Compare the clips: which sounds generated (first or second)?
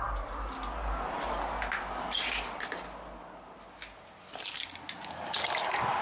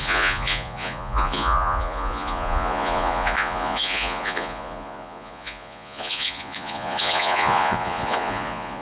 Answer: second